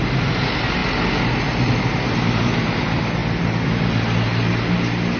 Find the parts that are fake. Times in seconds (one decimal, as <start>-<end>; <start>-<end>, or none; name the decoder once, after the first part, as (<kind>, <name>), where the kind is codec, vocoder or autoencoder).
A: none